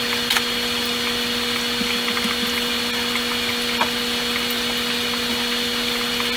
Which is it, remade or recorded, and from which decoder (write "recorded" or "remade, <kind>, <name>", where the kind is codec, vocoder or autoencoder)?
recorded